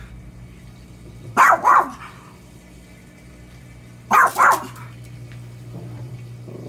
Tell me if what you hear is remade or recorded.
recorded